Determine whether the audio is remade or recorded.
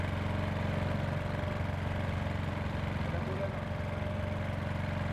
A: recorded